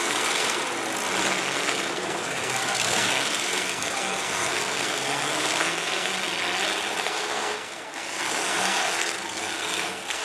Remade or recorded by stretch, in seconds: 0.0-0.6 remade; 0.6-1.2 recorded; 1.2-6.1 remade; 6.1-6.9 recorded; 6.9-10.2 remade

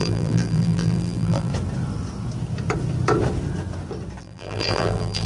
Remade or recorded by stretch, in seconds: 0.0-1.5 remade; 1.5-4.2 recorded; 4.2-5.3 remade

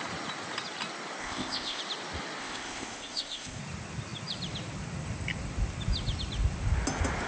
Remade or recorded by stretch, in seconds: 0.0-1.2 recorded; 1.2-1.8 remade; 1.8-2.4 recorded; 2.4-3.6 remade; 3.6-7.3 recorded

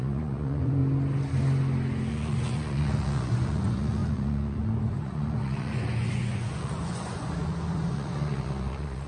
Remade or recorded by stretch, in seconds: 0.0-0.8 remade; 0.8-2.1 recorded; 2.1-9.1 remade

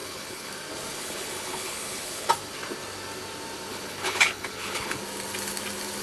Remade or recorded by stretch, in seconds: 0.0-0.5 remade; 0.5-0.9 recorded; 0.9-2.3 remade; 2.3-3.7 recorded; 3.7-5.0 remade; 5.0-6.0 recorded

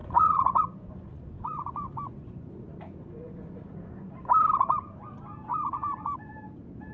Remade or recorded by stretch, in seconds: 0.0-4.1 remade; 4.1-5.5 recorded; 5.5-6.3 remade; 6.3-6.9 recorded